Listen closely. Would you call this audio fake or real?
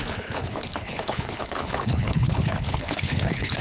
fake